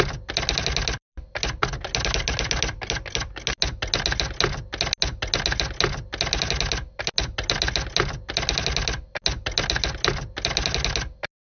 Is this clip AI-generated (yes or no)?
no